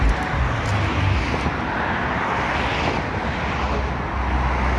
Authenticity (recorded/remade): recorded